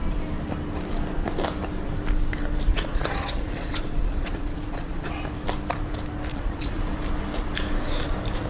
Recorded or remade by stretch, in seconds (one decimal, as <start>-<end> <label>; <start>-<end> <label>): 0.0-2.7 recorded; 2.7-5.1 remade; 5.1-6.3 recorded; 6.3-6.8 remade; 6.8-8.5 recorded